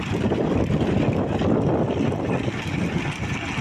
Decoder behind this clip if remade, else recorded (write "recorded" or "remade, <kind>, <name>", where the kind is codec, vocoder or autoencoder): recorded